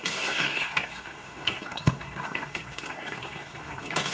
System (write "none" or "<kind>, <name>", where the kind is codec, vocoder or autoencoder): codec, SNAC